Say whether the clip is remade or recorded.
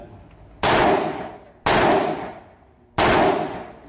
recorded